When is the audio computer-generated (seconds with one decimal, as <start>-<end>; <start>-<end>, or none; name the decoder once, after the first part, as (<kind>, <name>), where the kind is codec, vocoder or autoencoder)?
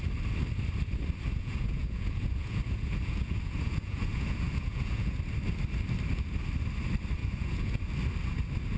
1.3-5.2 (vocoder, Vocos); 7.2-7.9